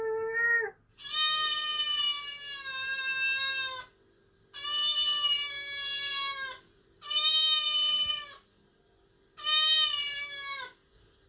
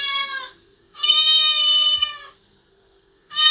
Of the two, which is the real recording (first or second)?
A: first